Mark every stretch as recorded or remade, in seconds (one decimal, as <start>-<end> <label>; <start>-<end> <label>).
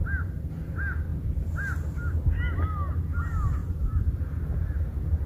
0.0-0.5 remade; 0.5-3.6 recorded; 3.6-4.4 remade; 4.4-5.3 recorded